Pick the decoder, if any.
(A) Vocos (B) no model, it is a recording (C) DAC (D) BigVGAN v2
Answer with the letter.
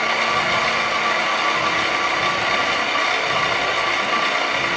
B